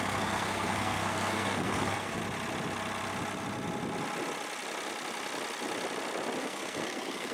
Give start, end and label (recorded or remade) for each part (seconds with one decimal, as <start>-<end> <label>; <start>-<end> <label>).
0.0-2.2 remade; 2.2-6.4 recorded; 6.4-7.3 remade